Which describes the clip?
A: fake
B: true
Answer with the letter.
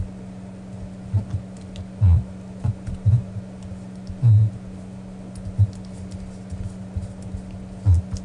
B